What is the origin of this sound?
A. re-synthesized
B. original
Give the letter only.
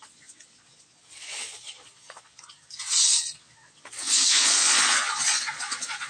A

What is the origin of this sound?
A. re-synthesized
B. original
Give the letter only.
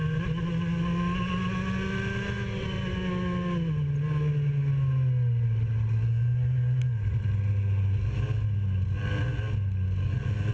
B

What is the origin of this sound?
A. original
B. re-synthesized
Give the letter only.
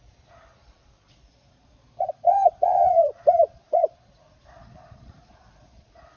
B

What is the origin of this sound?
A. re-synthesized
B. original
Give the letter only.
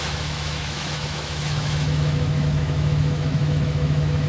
A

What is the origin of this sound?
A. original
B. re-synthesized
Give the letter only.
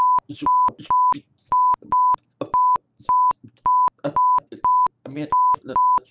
A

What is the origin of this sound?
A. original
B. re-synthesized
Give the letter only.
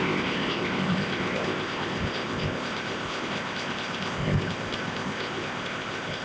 B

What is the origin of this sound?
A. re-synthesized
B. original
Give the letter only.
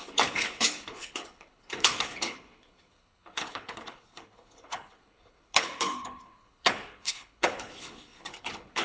A